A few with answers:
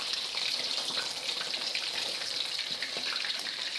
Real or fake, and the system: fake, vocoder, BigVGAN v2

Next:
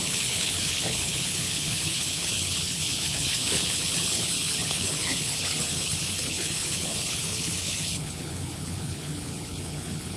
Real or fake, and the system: fake, codec, HILCodec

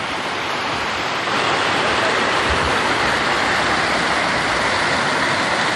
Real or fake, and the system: real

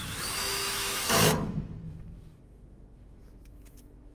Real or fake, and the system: fake, autoencoder, DAC-VAE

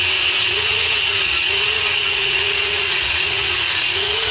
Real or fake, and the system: fake, vocoder, Vocos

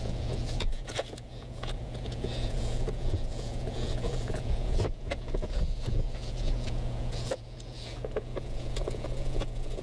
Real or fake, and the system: fake, vocoder, Vocos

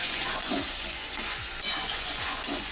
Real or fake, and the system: fake, vocoder, Vocos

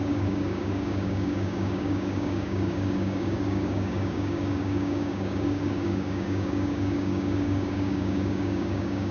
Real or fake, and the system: fake, codec, DAC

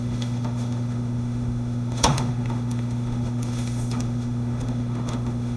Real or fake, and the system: fake, autoencoder, DAC-VAE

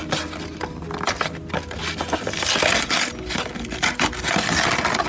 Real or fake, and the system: real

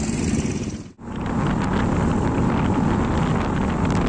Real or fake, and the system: real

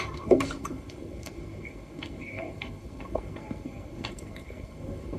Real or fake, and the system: fake, codec, SNAC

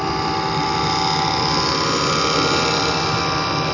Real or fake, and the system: real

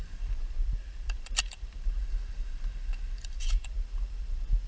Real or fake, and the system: fake, vocoder, BigVGAN v2